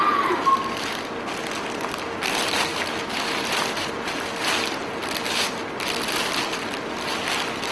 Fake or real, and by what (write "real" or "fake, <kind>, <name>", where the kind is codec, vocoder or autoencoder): real